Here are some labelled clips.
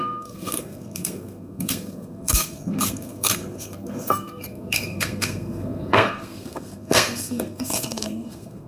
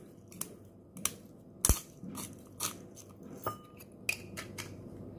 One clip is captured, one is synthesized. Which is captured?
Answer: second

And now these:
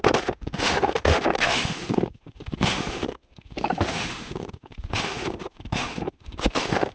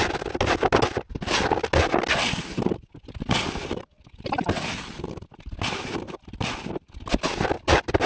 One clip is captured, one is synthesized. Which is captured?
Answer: second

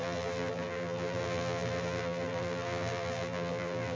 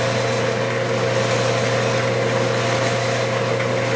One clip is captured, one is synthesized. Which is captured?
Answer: second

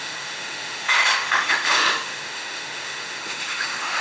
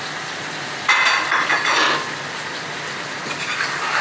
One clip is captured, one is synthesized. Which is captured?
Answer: second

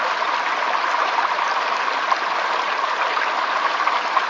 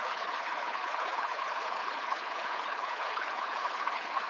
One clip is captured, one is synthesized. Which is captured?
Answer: first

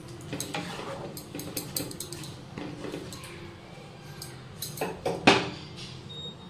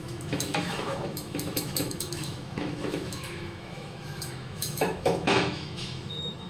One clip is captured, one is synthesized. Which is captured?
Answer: first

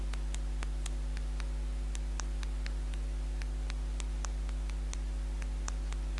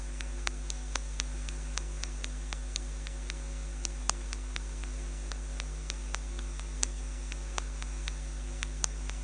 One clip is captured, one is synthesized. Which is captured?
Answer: first